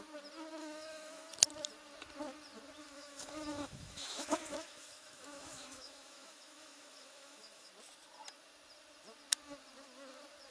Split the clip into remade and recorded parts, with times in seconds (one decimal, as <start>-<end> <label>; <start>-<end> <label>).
0.0-0.6 recorded; 0.6-1.3 remade; 1.3-2.8 recorded; 2.8-7.7 remade; 7.7-10.5 recorded